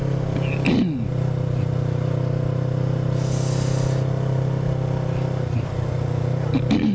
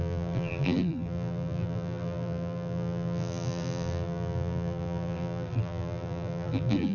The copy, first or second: second